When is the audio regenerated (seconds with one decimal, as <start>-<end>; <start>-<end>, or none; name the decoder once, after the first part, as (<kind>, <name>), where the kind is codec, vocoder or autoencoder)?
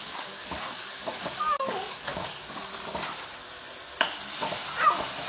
0.0-2.7 (codec, DAC)